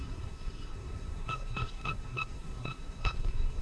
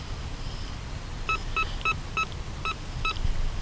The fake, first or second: first